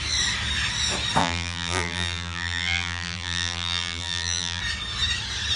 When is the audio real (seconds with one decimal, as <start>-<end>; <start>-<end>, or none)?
0.0-1.2; 4.6-5.6